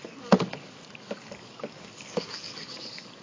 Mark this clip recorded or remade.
remade